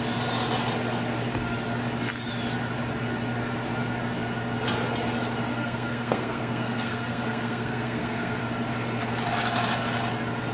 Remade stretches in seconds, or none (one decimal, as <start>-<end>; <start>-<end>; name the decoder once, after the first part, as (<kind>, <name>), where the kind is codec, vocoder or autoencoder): 5.5-8.4 (codec, SNAC)